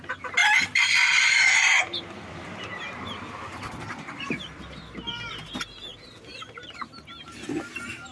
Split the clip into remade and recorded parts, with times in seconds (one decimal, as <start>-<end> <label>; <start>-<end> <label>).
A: 0.0-0.4 recorded; 0.4-4.8 remade; 4.8-8.1 recorded